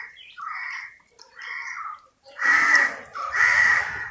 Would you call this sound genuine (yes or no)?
no